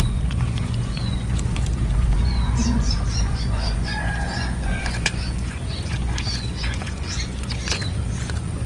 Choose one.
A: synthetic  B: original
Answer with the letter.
A